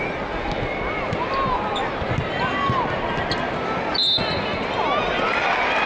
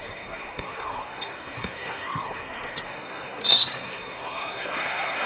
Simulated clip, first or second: second